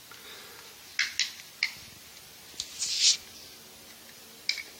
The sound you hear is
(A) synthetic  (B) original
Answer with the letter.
B